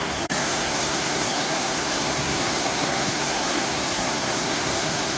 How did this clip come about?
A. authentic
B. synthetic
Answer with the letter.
B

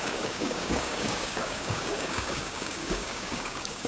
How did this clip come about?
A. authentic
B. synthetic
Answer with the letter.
B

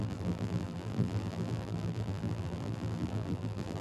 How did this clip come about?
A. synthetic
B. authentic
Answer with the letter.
A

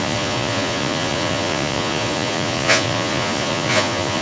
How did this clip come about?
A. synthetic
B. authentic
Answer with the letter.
A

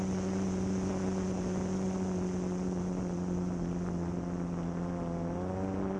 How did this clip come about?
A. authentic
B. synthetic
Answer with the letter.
A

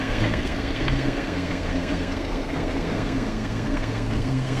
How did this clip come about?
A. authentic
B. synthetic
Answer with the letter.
B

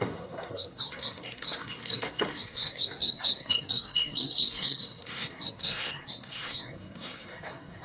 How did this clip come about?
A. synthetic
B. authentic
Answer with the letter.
A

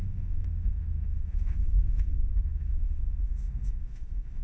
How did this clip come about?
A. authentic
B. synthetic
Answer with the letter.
B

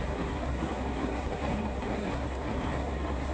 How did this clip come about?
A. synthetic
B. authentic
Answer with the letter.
A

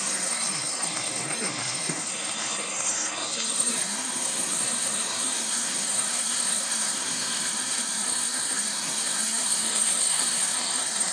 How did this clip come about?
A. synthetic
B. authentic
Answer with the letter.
A